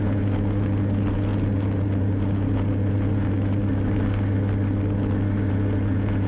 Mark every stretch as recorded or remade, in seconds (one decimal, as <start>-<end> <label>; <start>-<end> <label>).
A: 0.0-3.6 remade; 3.6-5.5 recorded; 5.5-6.3 remade